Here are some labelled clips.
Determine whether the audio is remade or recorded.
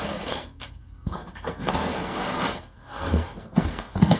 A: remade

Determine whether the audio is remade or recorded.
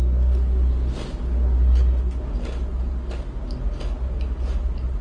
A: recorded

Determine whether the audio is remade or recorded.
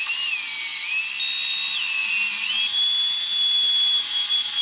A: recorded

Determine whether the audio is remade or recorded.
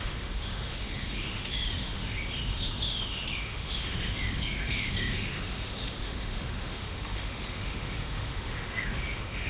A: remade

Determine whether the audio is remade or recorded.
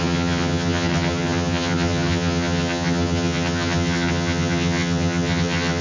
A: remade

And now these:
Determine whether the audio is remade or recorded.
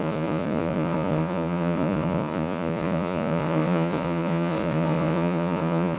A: remade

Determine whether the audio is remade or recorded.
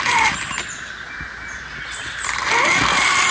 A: recorded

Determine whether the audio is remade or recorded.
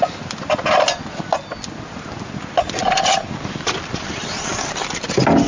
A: recorded